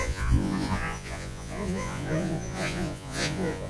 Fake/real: fake